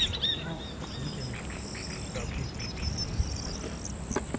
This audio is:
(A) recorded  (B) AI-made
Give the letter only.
A